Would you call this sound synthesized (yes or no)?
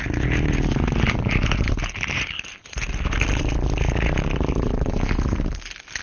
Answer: no